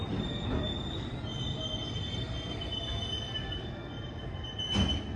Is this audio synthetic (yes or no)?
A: no